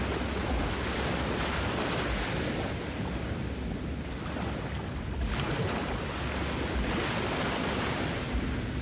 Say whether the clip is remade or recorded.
recorded